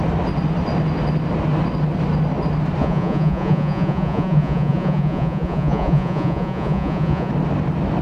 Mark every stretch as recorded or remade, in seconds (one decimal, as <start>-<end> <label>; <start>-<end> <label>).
0.0-2.8 recorded; 2.8-7.3 remade; 7.3-8.0 recorded